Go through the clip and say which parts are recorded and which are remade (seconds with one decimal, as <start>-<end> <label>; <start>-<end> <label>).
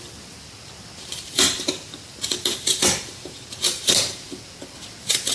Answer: 0.0-1.1 recorded; 1.1-4.3 remade; 4.3-5.3 recorded